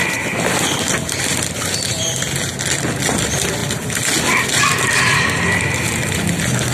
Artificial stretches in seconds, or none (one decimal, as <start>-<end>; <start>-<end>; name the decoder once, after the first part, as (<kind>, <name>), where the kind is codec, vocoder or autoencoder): none